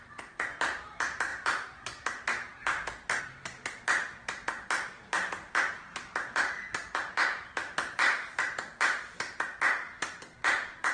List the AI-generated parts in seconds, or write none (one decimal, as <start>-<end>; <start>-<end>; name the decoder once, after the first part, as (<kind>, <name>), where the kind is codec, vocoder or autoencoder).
none